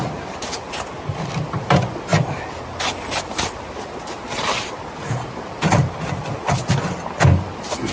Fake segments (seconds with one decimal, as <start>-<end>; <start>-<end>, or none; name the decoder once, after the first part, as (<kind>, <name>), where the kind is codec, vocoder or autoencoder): none